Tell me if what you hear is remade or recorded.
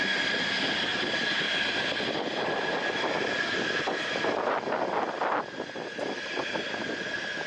recorded